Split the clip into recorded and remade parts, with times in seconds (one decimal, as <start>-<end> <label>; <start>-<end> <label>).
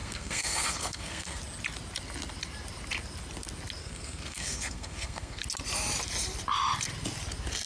0.0-1.4 remade; 1.4-3.8 recorded; 3.8-5.4 remade; 5.4-7.7 recorded